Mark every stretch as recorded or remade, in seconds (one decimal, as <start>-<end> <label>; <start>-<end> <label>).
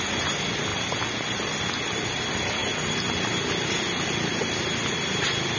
0.0-5.6 recorded